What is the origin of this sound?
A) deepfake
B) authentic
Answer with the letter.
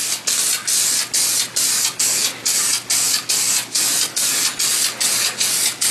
B